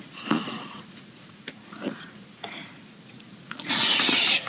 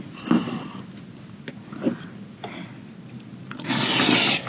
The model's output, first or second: first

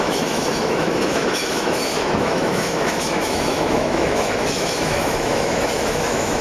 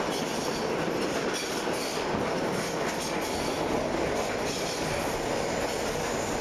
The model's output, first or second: first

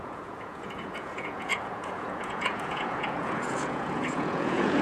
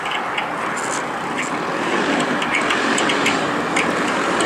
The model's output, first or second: first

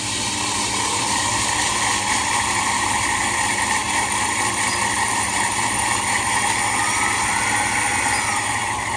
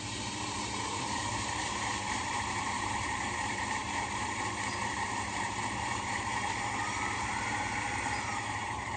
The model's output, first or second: second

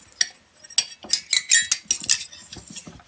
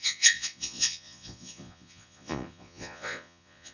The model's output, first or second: second